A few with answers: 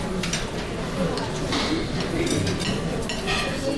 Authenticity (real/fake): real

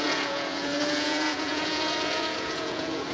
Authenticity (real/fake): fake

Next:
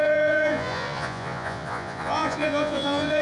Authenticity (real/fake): fake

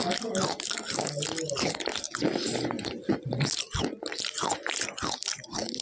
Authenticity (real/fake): real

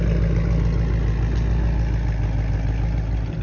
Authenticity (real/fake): real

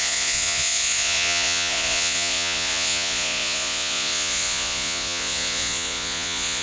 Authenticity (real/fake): fake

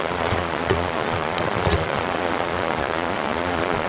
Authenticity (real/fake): fake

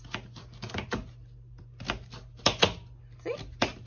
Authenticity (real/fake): real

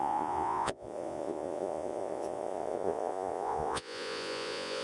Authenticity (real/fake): fake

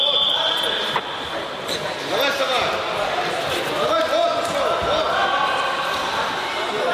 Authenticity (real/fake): real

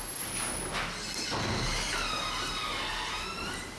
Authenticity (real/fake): real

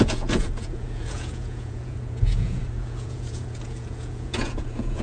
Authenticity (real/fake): fake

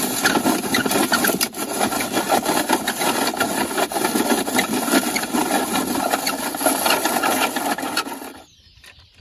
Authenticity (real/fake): real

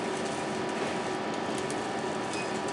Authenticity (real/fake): real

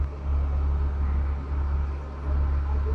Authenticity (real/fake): real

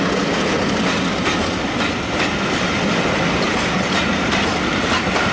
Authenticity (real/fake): real